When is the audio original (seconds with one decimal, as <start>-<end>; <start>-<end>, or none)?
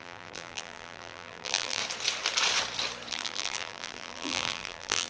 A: 1.8-3.1